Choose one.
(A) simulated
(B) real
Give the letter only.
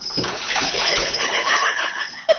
A